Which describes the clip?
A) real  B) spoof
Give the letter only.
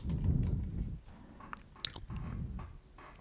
A